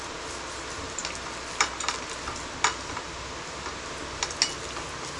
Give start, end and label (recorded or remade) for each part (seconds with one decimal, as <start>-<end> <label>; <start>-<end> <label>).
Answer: 0.0-5.2 recorded